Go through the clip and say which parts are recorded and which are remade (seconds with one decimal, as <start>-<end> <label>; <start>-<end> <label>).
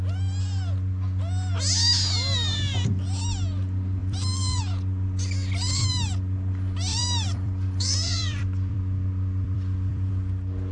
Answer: 0.0-4.0 recorded; 4.0-4.6 remade; 4.6-6.9 recorded; 6.9-10.1 remade; 10.1-10.7 recorded